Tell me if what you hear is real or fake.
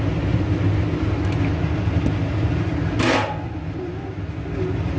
real